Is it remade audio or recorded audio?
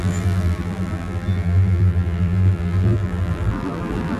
remade